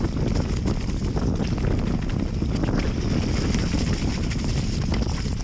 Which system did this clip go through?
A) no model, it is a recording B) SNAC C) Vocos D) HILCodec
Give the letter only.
A